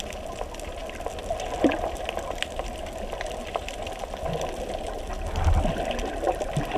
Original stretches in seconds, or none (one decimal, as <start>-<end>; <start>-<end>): 0.0-6.8